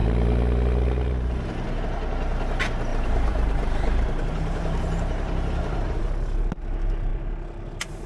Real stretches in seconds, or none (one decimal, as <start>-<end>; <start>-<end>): 1.8-2.9; 6.0-8.1